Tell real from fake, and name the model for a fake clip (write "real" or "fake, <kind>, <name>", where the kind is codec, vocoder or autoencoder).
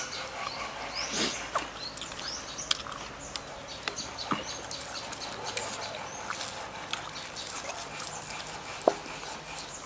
real